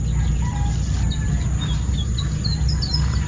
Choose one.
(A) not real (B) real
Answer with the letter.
B